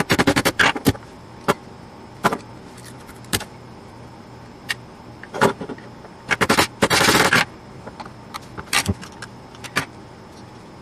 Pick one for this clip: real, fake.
fake